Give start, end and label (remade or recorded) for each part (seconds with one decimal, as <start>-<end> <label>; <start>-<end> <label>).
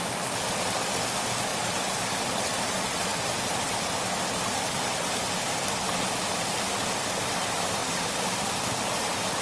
0.0-9.4 recorded